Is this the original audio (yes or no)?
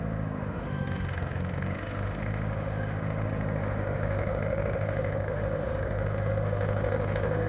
no